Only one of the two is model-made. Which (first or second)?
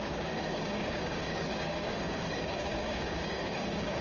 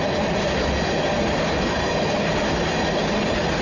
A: first